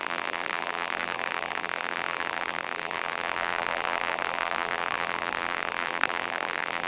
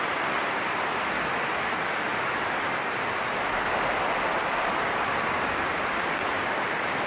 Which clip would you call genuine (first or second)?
second